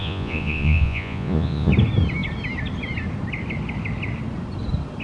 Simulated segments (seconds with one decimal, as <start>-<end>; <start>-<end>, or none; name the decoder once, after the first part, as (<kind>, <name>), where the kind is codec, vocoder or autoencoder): 0.0-1.7 (vocoder, Vocos)